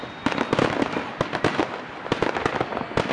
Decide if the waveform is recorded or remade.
recorded